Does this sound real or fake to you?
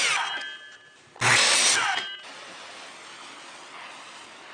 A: real